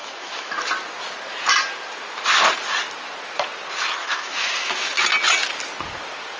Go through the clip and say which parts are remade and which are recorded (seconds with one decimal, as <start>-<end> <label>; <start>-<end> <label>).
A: 0.0-0.5 remade; 0.5-4.0 recorded; 4.0-5.0 remade; 5.0-6.4 recorded